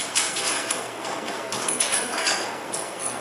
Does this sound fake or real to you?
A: fake